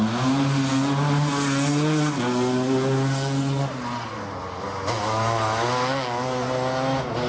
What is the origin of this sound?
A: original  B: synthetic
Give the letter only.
A